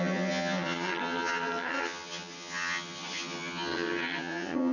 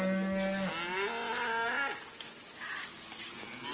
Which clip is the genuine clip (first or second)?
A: second